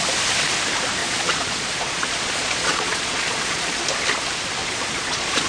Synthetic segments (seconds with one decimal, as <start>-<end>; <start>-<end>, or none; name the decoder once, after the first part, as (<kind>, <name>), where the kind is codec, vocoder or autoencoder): 1.0-3.8 (vocoder, Vocos); 4.6-5.5